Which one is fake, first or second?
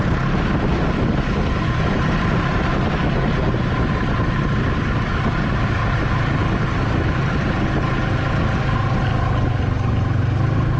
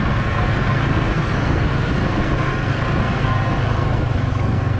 second